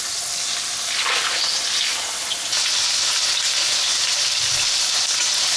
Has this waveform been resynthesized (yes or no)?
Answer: no